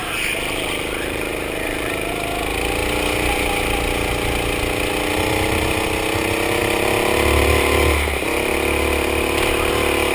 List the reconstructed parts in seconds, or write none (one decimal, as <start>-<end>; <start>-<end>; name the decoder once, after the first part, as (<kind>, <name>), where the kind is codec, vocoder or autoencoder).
0.0-2.1 (vocoder, BigVGAN v2)